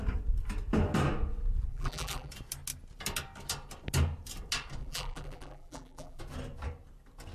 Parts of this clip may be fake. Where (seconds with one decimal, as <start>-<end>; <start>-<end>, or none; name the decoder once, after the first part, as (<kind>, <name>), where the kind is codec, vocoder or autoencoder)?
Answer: 1.7-2.3 (vocoder, BigVGAN v2); 4.8-6.2